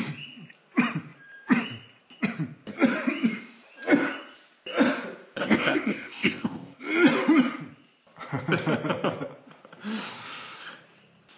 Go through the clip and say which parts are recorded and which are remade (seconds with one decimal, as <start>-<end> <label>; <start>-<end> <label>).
0.0-5.4 recorded; 5.4-6.8 remade; 6.8-11.4 recorded